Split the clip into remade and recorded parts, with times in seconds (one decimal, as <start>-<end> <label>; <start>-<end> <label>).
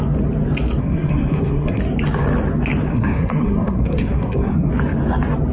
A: 0.0-0.8 recorded; 0.8-1.8 remade; 1.8-2.9 recorded; 2.9-4.7 remade; 4.7-5.5 recorded